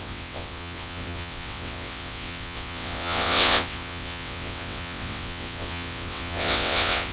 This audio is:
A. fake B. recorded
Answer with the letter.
A